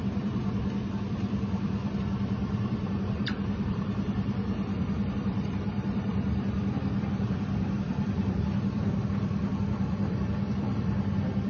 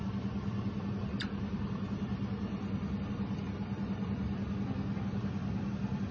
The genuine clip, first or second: second